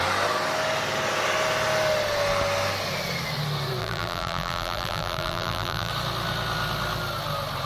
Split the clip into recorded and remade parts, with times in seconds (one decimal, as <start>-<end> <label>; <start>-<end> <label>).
0.0-3.8 recorded; 3.8-5.9 remade; 5.9-7.7 recorded